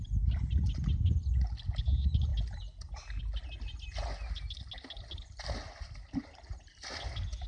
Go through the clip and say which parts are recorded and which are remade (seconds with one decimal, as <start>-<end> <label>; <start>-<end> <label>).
0.0-7.5 recorded